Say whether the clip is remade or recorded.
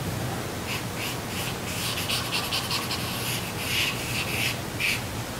recorded